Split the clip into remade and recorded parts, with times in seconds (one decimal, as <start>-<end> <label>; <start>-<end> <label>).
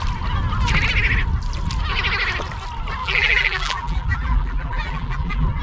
0.0-3.0 recorded; 3.0-5.6 remade